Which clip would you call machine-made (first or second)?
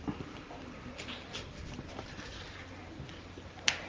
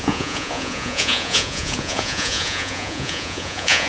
second